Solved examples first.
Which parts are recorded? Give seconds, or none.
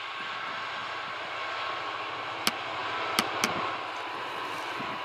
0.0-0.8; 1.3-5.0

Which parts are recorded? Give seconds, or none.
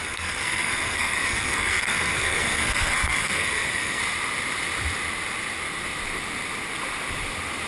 4.0-7.7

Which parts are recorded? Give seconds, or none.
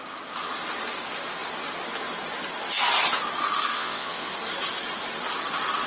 0.0-3.7; 4.3-5.9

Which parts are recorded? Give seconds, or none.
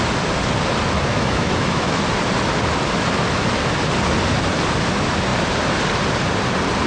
0.0-1.1; 2.0-6.9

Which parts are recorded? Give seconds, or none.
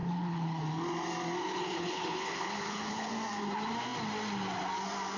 0.6-1.4; 3.1-5.2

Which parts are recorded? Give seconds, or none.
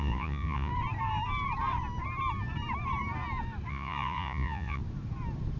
0.7-3.7; 4.8-5.6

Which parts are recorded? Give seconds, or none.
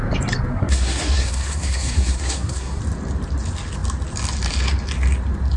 0.0-0.5; 2.8-5.6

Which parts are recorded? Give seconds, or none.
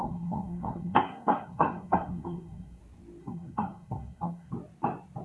2.8-3.2; 4.5-5.2